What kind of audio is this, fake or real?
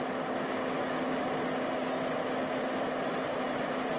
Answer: real